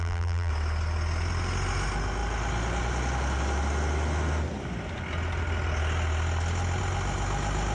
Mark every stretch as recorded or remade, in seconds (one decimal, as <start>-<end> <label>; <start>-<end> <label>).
0.0-0.5 remade; 0.5-7.7 recorded